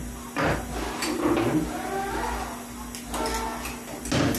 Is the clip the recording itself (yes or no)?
yes